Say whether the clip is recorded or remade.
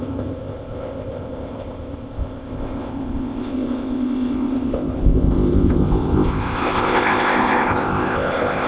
remade